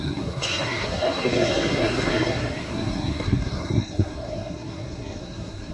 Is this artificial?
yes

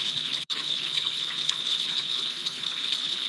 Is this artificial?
yes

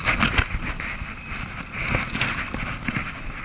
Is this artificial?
no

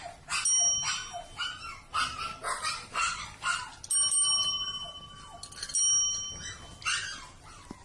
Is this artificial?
no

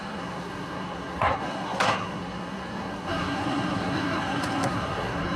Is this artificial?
yes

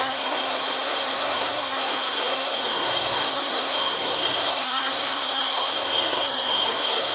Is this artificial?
yes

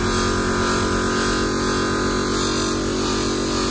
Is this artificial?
no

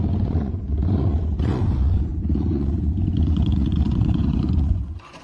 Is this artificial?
yes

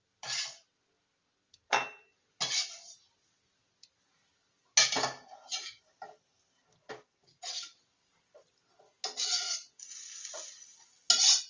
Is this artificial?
no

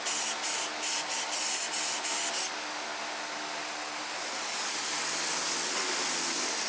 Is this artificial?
no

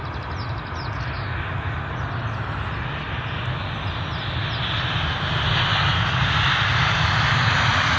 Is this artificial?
no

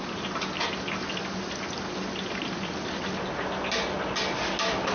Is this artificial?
no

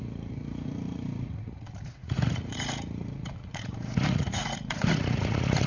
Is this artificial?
yes